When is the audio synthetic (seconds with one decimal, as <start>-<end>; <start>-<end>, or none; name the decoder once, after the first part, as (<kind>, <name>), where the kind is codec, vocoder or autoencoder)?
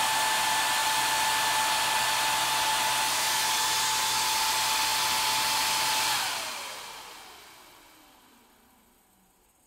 0.8-1.7 (vocoder, BigVGAN v2)